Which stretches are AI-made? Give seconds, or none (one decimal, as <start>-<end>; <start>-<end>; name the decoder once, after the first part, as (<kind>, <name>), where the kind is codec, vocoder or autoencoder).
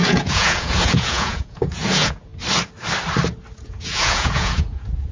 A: 0.0-2.3 (vocoder, Vocos); 3.6-5.1